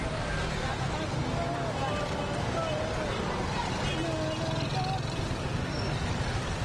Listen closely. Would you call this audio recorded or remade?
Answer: recorded